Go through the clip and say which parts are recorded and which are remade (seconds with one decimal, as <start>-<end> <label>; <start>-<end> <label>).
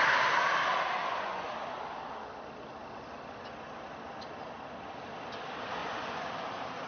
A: 0.0-1.0 recorded; 1.0-1.5 remade; 1.5-5.8 recorded; 5.8-6.3 remade; 6.3-6.9 recorded